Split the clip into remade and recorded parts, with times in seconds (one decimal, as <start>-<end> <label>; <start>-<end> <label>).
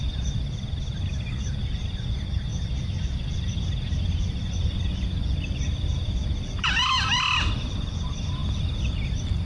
0.0-9.5 recorded